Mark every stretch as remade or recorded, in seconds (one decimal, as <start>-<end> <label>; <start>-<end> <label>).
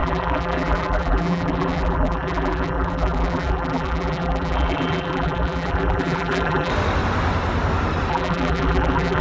0.0-6.7 remade; 6.7-8.1 recorded; 8.1-9.2 remade